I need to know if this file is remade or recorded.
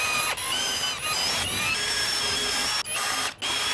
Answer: recorded